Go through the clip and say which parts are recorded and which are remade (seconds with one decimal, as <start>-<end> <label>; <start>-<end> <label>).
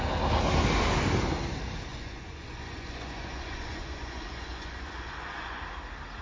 0.0-1.9 recorded; 1.9-5.6 remade; 5.6-6.2 recorded